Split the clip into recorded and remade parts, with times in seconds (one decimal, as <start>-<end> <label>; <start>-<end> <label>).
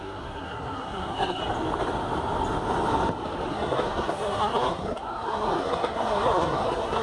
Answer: 0.0-1.4 remade; 1.4-3.5 recorded; 3.5-7.0 remade